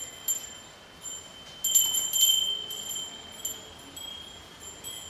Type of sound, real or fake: real